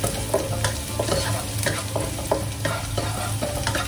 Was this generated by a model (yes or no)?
no